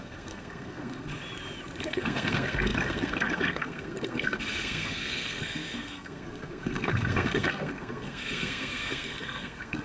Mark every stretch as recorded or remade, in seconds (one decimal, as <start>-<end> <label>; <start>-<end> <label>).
0.0-1.1 remade; 1.1-1.8 recorded; 1.8-9.8 remade